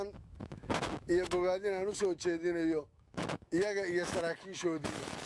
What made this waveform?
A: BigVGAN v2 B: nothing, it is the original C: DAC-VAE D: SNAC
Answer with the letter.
C